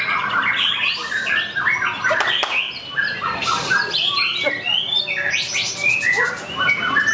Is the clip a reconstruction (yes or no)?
no